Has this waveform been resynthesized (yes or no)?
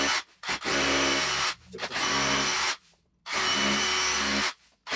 no